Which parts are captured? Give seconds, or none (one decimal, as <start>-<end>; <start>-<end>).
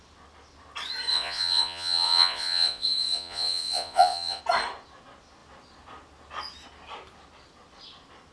0.0-1.1; 4.4-8.3